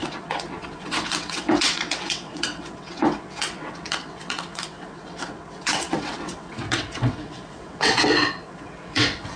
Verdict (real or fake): fake